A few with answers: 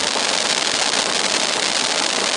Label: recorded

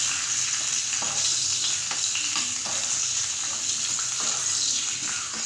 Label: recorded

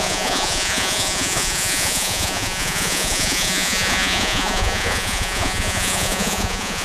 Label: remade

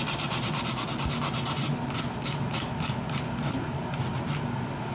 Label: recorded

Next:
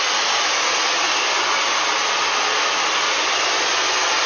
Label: recorded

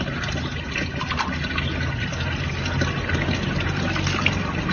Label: recorded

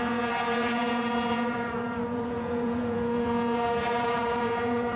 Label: remade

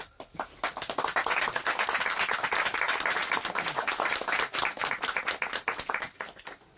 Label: recorded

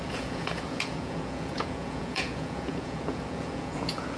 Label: remade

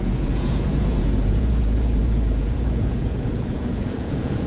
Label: remade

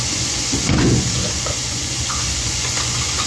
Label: remade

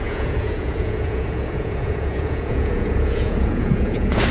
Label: remade